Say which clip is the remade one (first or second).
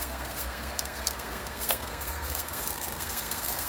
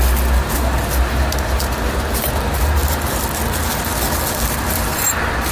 first